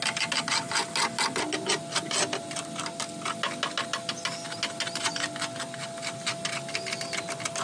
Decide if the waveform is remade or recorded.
recorded